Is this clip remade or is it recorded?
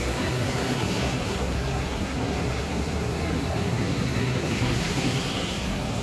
remade